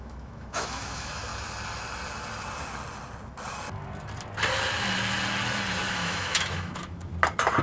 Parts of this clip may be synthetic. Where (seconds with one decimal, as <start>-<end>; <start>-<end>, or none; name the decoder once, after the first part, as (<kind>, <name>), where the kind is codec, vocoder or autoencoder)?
0.0-1.3 (autoencoder, DAC-VAE); 5.9-7.1